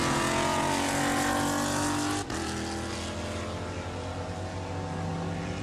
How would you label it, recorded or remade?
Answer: recorded